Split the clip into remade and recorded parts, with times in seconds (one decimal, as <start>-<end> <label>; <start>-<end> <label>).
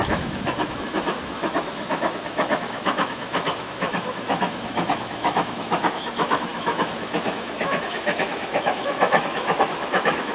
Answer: 0.0-10.3 remade